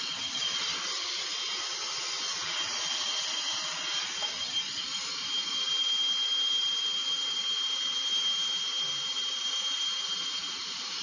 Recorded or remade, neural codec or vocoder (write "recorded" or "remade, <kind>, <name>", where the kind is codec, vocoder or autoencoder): recorded